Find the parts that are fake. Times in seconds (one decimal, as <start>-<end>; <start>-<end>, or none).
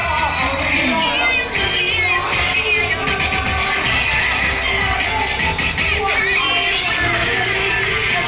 none